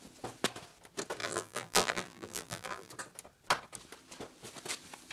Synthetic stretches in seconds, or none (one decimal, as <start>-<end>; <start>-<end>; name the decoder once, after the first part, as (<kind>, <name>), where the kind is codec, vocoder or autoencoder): 1.2-2.9 (vocoder, BigVGAN v2)

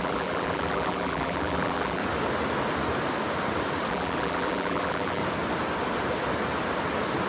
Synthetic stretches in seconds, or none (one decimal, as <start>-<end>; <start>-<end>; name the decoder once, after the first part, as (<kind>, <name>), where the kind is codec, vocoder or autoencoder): 0.0-2.0 (vocoder, BigVGAN v2); 3.9-5.2